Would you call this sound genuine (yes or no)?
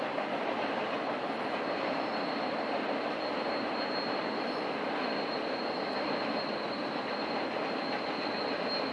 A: yes